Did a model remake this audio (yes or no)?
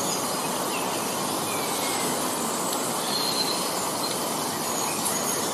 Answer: no